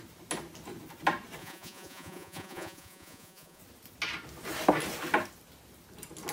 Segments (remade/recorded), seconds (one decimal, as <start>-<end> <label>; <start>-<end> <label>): 0.0-1.4 recorded; 1.4-3.6 remade; 3.6-6.3 recorded